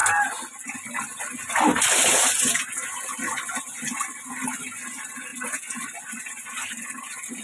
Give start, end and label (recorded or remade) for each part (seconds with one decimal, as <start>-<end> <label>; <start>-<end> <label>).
0.0-7.4 recorded